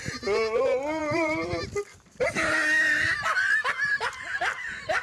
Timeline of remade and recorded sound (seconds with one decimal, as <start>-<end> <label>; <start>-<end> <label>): 0.0-1.0 recorded; 1.0-1.6 remade; 1.6-5.0 recorded